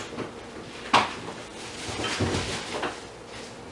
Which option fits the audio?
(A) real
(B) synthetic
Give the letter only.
A